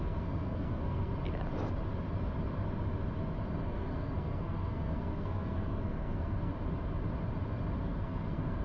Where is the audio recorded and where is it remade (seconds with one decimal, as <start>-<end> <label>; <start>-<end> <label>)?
0.0-1.1 remade; 1.1-3.6 recorded; 3.6-6.5 remade; 6.5-7.8 recorded; 7.8-8.6 remade